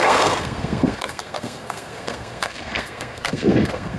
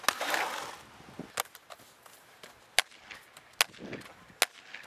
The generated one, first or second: first